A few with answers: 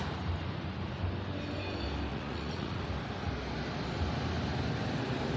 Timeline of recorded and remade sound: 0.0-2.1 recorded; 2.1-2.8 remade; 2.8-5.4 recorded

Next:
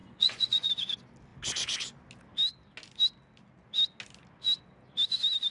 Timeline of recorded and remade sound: 0.0-0.7 remade; 0.7-5.5 recorded

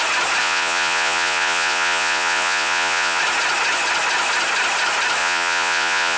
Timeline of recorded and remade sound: 0.0-0.4 recorded; 0.4-3.2 remade; 3.2-5.2 recorded; 5.2-6.2 remade

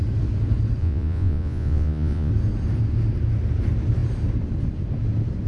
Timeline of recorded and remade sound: 0.0-0.8 recorded; 0.8-2.3 remade; 2.3-5.5 recorded

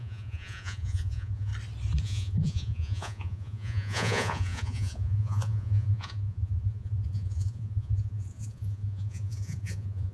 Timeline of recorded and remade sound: 0.0-1.5 remade; 1.5-2.0 recorded; 2.0-10.1 remade

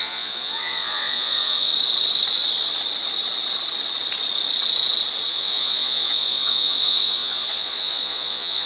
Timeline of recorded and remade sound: 0.0-1.7 remade; 1.7-5.3 recorded; 5.3-8.7 remade

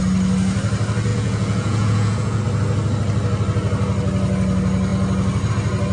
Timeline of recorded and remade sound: 0.0-1.1 recorded; 1.1-2.4 remade; 2.4-5.9 recorded